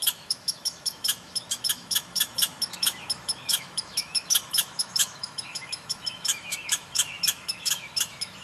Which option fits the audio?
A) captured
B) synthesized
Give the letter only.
B